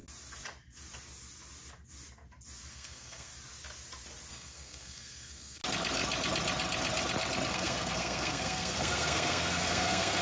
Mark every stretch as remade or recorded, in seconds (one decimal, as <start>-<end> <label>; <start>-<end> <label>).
0.0-2.7 recorded; 2.7-3.3 remade; 3.3-4.3 recorded; 4.3-5.6 remade; 5.6-7.5 recorded; 7.5-10.2 remade